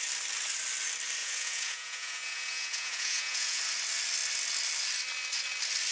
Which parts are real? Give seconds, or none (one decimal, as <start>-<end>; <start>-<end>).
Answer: 0.0-1.2; 3.6-5.9